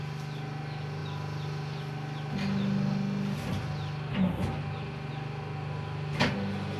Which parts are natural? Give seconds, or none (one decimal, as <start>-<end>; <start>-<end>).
0.0-6.8